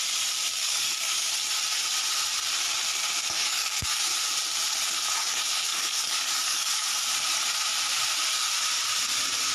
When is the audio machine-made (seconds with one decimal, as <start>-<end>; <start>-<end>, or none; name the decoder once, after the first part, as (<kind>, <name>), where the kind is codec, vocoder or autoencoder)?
0.6-1.3 (codec, DAC); 3.4-4.0; 5.7-6.9